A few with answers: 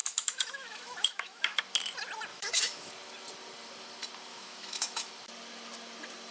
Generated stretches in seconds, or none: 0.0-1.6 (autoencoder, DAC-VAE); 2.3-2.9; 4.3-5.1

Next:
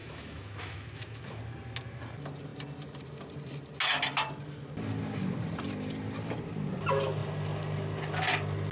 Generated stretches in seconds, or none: 0.0-1.4 (autoencoder, DAC-VAE)

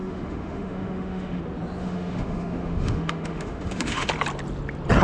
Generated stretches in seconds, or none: 0.0-1.4 (autoencoder, DAC-VAE); 1.8-4.1